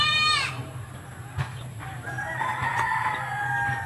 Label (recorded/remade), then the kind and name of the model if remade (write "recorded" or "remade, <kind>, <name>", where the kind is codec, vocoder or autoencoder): recorded